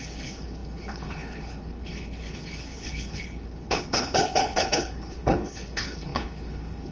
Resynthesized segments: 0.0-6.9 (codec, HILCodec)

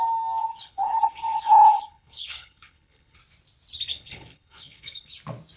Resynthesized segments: 0.5-3.2 (codec, HILCodec); 3.9-5.1

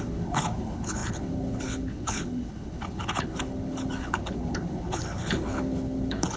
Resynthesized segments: 0.0-6.4 (codec, HILCodec)

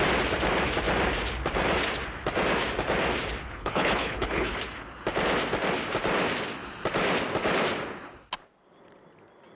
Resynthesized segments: 3.4-4.6 (codec, HILCodec)